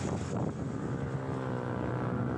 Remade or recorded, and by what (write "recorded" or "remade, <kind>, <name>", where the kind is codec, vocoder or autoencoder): recorded